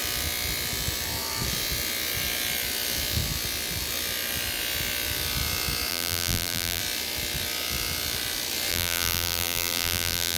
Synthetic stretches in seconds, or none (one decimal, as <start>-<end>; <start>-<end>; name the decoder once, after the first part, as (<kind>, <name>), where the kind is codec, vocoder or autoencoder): 5.9-6.8 (vocoder, BigVGAN v2); 8.7-10.4